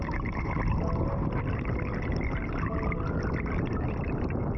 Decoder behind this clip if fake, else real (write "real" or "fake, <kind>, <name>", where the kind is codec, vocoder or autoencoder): real